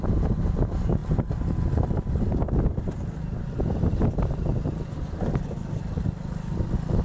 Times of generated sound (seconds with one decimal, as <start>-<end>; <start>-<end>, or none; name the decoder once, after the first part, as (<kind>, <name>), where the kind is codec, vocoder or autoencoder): none